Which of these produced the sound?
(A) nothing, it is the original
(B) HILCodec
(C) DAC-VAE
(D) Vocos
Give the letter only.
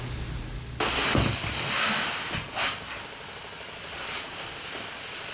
A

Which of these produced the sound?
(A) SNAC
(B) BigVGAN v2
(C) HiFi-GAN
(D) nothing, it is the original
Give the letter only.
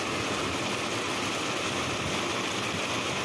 D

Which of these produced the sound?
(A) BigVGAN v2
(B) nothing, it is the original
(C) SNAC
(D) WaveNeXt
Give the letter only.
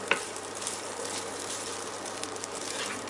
A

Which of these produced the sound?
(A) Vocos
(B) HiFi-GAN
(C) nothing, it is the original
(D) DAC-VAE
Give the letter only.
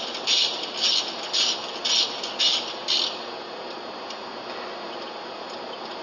C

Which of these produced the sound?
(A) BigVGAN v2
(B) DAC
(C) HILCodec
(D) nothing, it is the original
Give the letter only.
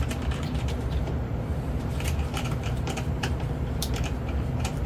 A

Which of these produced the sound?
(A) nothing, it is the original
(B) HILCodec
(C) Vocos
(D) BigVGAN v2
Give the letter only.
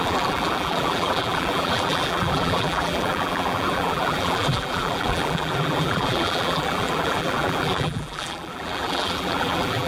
D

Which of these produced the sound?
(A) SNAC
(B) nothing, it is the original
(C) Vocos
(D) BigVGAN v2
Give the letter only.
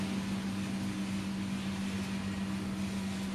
B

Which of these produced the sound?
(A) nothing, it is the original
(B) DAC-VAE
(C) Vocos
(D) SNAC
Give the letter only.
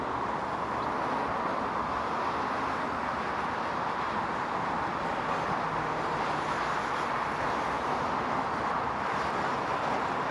A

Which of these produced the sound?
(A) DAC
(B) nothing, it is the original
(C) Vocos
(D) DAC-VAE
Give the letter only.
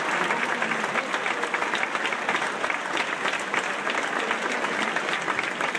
B